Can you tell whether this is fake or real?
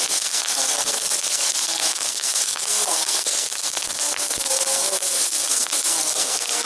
fake